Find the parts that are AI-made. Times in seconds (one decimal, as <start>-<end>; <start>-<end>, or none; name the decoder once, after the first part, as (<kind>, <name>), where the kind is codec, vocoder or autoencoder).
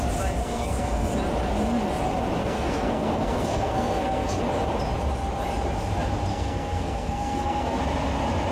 0.4-1.1 (codec, SNAC); 2.4-4.4; 6.3-7.8